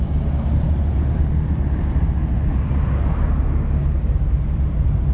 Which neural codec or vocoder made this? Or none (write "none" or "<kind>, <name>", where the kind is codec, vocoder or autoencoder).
none